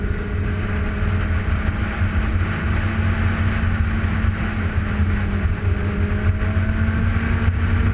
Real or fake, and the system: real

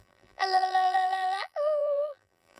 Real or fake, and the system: fake, vocoder, BigVGAN v2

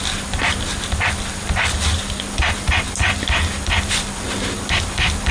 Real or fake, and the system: real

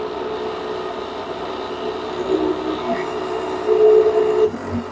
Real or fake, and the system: real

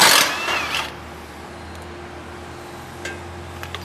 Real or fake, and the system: real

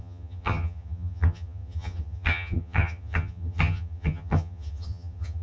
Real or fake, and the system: fake, vocoder, HiFi-GAN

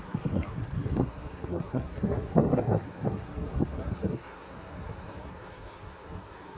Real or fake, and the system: fake, codec, SNAC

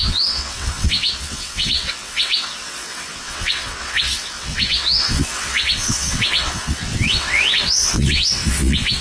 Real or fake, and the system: fake, vocoder, WaveNeXt